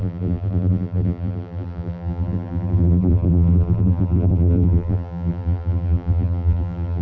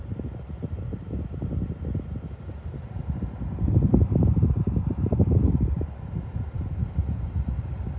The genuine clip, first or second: second